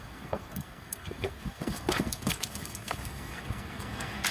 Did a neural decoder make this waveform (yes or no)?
yes